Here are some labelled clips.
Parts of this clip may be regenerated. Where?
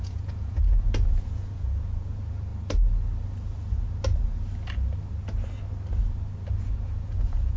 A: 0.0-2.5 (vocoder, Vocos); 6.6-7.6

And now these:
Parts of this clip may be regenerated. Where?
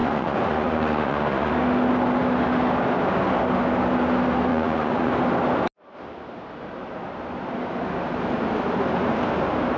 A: 0.0-1.5 (vocoder, Vocos); 4.5-5.1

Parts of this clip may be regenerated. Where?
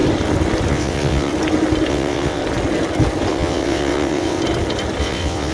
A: 0.7-1.3 (vocoder, WaveNeXt); 1.9-2.4; 3.3-4.4; 5.0-5.5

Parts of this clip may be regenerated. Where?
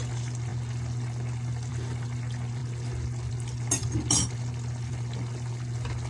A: none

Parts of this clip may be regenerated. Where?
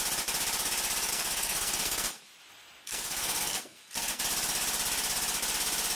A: 1.1-2.2 (codec, SNAC); 2.8-4.2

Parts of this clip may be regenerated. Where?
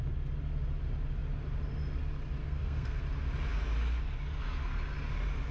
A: 2.4-3.0 (codec, SNAC)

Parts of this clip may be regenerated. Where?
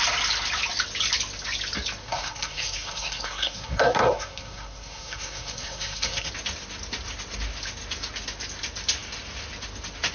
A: 2.0-6.3 (codec, SNAC)